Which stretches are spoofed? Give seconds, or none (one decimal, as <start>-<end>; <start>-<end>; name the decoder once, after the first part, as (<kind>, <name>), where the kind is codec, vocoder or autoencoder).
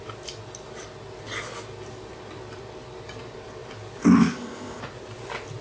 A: 4.0-4.8 (codec, ZipCodec)